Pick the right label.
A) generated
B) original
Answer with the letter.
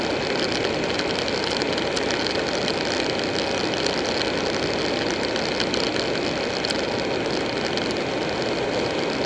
B